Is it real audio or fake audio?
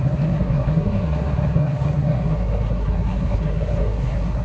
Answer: fake